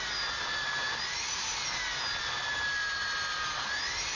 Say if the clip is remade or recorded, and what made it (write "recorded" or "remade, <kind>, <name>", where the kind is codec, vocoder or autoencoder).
recorded